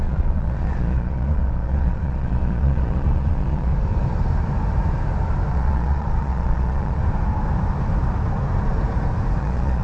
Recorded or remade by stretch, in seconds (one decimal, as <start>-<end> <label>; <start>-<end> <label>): 0.0-3.7 remade; 3.7-5.5 recorded; 5.5-7.0 remade; 7.0-9.4 recorded; 9.4-9.8 remade